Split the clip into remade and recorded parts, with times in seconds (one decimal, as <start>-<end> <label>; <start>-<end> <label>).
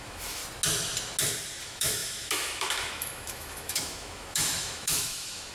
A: 0.0-0.4 remade; 0.4-1.6 recorded; 1.6-5.5 remade